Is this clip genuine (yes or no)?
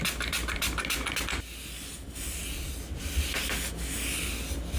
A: yes